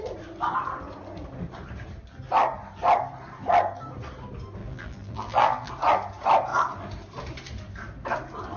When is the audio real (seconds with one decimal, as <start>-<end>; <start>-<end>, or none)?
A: 0.0-4.6; 5.7-8.6